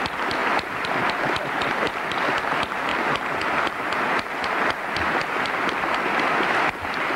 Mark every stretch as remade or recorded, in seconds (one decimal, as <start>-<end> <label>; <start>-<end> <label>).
0.0-7.2 recorded